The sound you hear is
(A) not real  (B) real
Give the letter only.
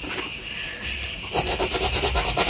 B